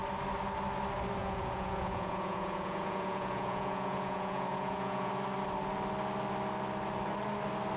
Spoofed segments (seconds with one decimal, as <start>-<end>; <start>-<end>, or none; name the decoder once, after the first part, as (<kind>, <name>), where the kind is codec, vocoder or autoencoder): 1.2-5.1 (vocoder, Vocos)